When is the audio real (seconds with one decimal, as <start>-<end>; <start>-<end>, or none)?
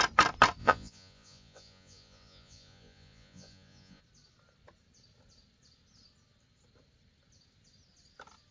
0.0-0.6; 4.0-8.5